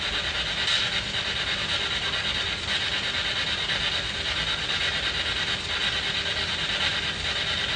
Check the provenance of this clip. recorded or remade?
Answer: recorded